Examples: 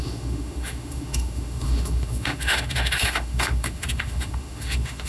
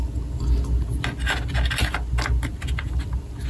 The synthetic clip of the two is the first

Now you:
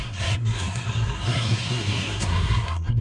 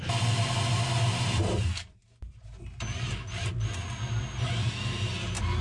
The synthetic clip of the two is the first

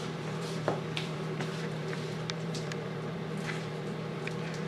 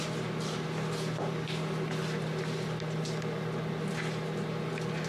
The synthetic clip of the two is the first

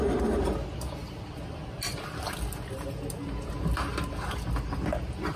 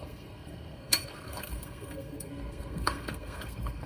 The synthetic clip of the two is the second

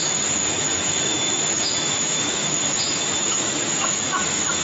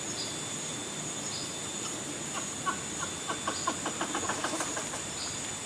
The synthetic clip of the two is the first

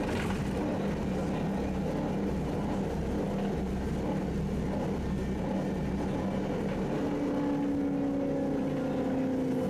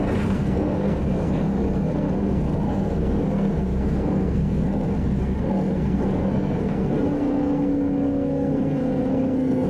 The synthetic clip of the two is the second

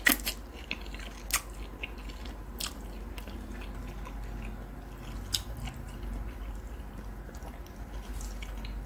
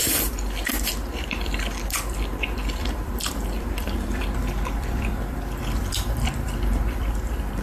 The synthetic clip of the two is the second